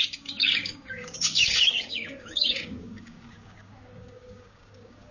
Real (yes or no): no